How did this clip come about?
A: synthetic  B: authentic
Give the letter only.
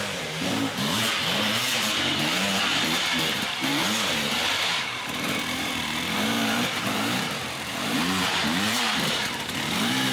A